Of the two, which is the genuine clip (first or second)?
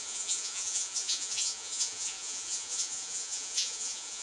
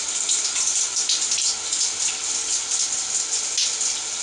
second